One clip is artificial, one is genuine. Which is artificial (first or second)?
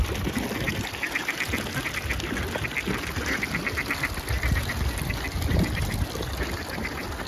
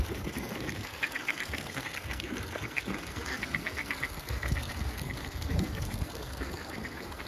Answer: second